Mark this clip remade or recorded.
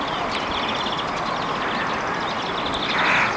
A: recorded